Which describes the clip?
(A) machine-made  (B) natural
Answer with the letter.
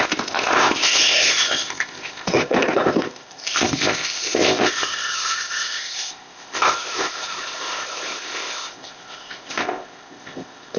A